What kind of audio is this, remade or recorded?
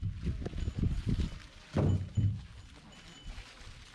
recorded